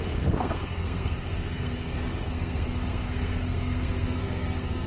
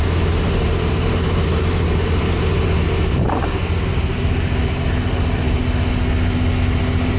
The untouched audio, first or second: second